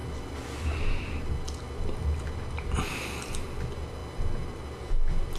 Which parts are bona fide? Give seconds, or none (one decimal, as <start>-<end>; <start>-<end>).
0.0-5.4